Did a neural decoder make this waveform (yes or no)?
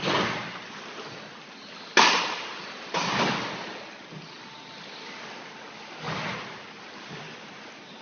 no